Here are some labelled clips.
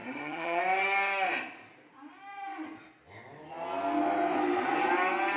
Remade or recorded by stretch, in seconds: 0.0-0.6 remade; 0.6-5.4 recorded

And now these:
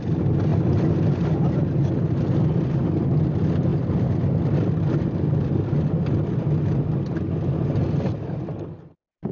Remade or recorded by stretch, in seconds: 0.0-9.3 recorded

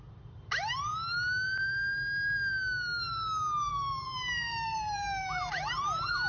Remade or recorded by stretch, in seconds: 0.0-0.9 remade; 0.9-3.7 recorded; 3.7-6.3 remade